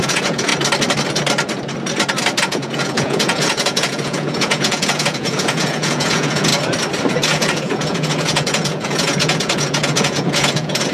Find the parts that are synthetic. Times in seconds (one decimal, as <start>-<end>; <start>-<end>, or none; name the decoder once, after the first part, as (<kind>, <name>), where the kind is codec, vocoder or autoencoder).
0.0-0.5 (vocoder, Vocos); 2.4-6.5; 7.1-10.9